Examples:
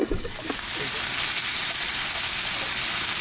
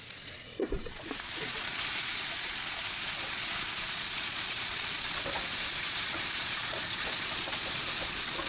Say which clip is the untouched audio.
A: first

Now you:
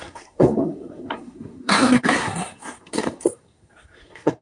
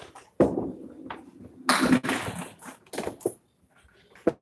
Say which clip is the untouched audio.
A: second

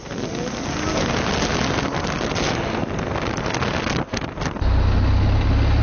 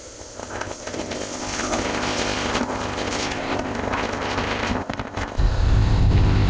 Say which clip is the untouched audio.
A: first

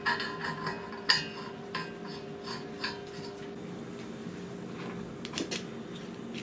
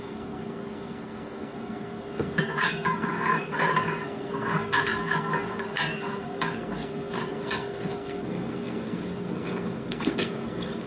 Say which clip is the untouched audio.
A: first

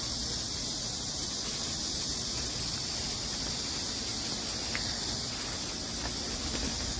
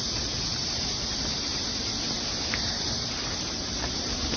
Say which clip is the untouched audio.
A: first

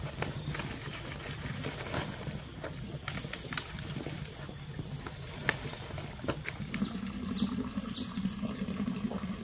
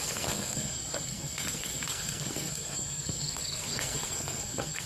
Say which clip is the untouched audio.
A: first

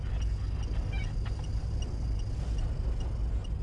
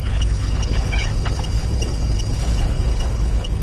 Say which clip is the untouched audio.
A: first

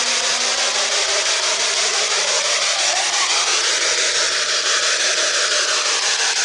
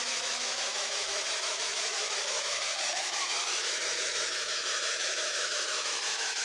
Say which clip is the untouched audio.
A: first